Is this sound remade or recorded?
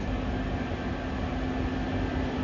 recorded